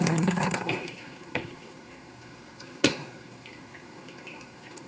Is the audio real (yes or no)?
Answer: no